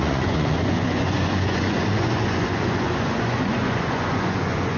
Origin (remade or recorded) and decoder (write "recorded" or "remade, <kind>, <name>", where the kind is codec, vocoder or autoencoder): remade, vocoder, Vocos